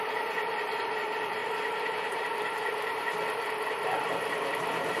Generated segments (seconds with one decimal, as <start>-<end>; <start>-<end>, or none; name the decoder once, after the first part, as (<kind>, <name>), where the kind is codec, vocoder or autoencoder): 0.0-1.4 (vocoder, BigVGAN v2); 1.9-5.0